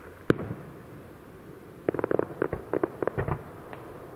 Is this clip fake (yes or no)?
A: no